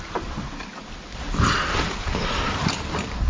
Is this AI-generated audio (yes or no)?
no